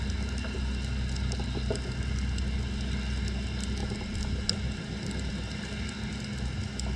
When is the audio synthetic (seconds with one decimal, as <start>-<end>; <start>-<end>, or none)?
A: none